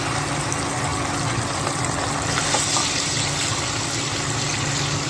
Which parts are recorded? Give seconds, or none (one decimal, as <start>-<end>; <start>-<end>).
0.0-5.1